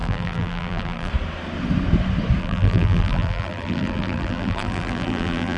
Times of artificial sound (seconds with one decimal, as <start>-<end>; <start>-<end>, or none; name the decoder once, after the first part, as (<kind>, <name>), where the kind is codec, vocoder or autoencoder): 0.0-1.1 (vocoder, BigVGAN v2); 2.4-5.6